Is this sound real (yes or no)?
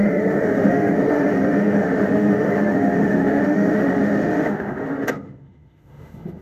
no